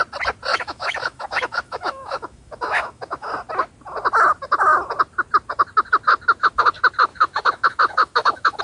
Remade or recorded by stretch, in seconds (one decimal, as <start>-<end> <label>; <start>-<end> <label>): 0.0-0.5 recorded; 0.5-3.3 remade; 3.3-7.1 recorded; 7.1-8.6 remade